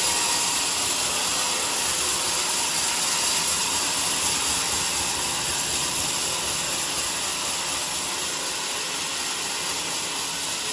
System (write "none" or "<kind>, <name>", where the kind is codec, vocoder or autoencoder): none